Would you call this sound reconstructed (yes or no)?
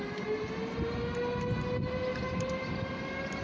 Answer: no